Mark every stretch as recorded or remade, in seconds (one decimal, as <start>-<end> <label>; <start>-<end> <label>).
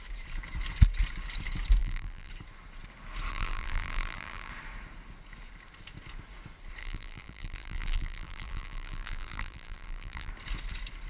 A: 0.0-1.8 recorded; 1.8-2.3 remade; 2.3-3.3 recorded; 3.3-4.5 remade; 4.5-6.8 recorded; 6.8-10.3 remade; 10.3-11.1 recorded